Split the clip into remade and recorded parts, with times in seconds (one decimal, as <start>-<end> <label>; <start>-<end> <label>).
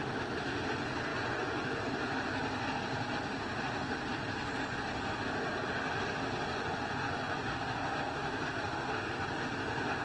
0.0-1.1 recorded; 1.1-1.8 remade; 1.8-6.5 recorded; 6.5-7.4 remade; 7.4-10.0 recorded